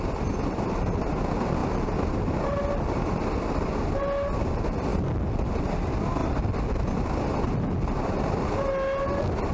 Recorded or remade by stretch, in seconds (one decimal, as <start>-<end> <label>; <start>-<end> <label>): 0.0-9.5 recorded